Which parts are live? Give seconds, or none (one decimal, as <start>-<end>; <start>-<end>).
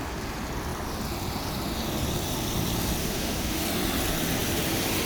0.0-3.0; 3.6-5.1